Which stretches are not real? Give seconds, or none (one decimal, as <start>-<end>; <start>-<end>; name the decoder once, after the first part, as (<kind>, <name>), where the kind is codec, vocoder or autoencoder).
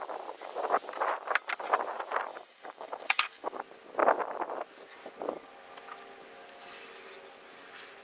2.3-3.6 (codec, DAC)